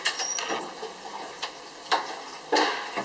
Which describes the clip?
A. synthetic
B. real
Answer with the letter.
B